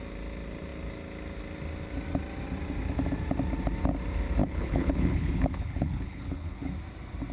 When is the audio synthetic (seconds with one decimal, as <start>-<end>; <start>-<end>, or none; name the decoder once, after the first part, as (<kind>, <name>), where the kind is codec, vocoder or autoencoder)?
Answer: 4.4-6.7 (codec, HILCodec)